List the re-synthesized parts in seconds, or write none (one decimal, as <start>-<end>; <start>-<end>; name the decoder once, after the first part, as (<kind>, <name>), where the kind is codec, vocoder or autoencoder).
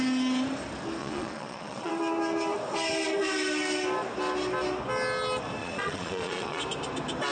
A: 1.0-1.9 (vocoder, Vocos); 5.6-6.6